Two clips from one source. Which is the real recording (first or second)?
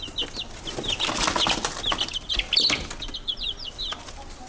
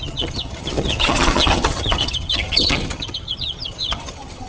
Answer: first